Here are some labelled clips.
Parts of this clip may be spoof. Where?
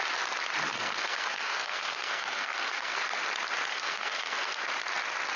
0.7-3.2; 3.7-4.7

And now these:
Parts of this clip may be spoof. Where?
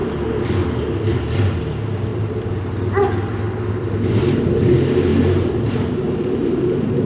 5.1-7.0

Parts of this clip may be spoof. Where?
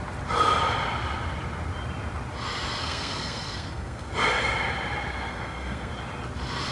2.8-4.1; 5.3-5.9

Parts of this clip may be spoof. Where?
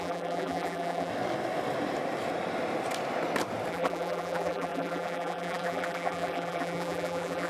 0.0-1.1; 3.7-7.5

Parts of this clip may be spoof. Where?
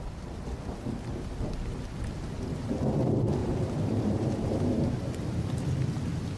3.4-5.5